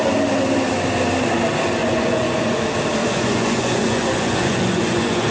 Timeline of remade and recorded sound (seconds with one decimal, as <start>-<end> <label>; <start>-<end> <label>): 0.0-1.8 recorded; 1.8-2.6 remade; 2.6-3.0 recorded; 3.0-5.3 remade

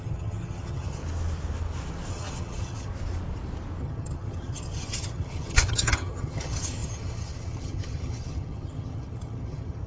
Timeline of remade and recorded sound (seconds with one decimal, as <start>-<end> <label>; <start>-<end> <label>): 0.0-1.0 remade; 1.0-2.1 recorded; 2.1-2.9 remade; 2.9-3.8 recorded; 3.8-9.9 remade